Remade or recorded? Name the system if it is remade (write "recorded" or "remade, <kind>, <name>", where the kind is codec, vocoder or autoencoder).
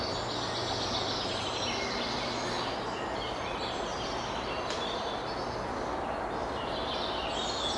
recorded